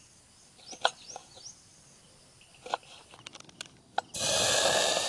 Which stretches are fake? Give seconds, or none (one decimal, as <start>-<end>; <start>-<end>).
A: none